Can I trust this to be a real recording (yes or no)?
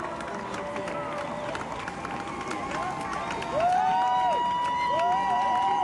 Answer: yes